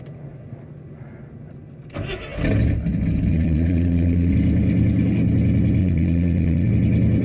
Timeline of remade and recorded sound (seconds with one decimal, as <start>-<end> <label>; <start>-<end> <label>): 0.0-3.3 recorded; 3.3-4.3 remade; 4.3-5.8 recorded; 5.8-6.7 remade; 6.7-7.2 recorded